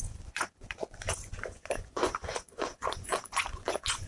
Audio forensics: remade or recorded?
remade